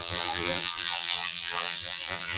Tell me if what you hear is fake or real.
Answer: fake